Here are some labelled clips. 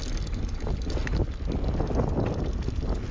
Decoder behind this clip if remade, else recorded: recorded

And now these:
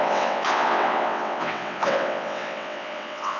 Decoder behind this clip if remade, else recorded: remade, vocoder, WaveNeXt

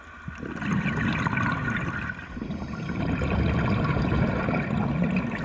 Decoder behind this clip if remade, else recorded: recorded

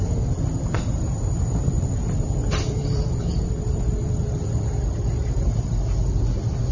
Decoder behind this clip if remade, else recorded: recorded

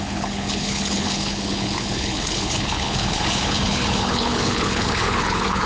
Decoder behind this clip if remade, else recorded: remade, codec, HILCodec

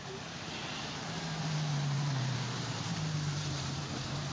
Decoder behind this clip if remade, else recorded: remade, vocoder, BigVGAN v2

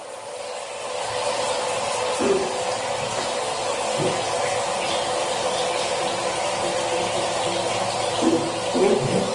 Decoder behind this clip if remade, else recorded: recorded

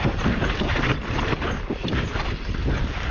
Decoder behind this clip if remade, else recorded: recorded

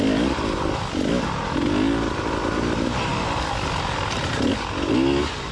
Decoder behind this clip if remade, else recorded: recorded